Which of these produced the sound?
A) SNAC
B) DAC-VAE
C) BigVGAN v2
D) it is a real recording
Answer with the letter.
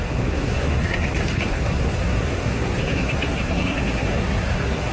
A